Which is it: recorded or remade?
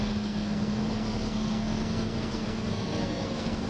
remade